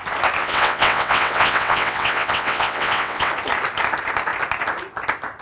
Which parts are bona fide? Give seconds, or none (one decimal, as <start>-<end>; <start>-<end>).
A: 0.0-0.4; 3.3-5.4